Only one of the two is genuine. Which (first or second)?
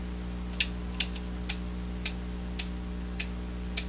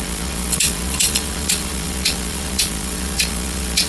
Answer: first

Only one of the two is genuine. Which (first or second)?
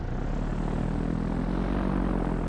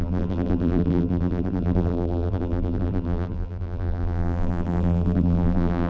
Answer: first